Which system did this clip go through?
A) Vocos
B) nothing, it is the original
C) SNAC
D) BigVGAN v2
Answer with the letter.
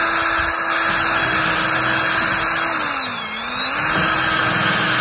B